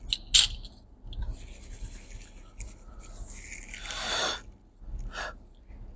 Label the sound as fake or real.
real